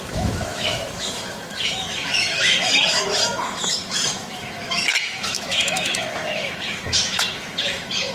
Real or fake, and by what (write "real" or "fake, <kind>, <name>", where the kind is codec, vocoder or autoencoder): fake, autoencoder, DAC-VAE